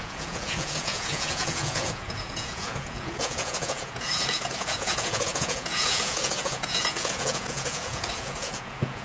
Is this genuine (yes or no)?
no